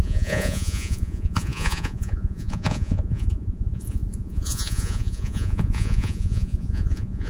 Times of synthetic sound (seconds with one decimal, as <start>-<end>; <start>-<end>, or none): 0.0-7.3

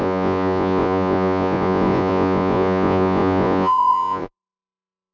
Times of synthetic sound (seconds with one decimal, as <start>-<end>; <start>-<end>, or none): 0.0-5.1

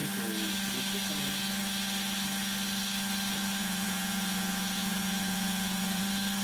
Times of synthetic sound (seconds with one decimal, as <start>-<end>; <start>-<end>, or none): 3.6-6.0

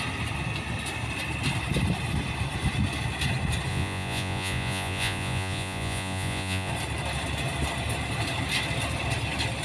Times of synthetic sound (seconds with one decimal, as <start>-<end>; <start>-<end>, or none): 3.7-6.7